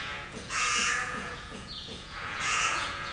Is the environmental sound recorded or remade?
remade